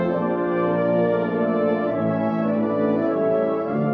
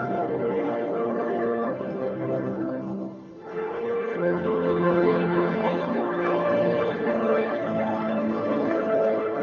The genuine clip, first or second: first